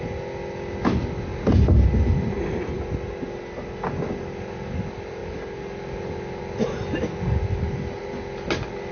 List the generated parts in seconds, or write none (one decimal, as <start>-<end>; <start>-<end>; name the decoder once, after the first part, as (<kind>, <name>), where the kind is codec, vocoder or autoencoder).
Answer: none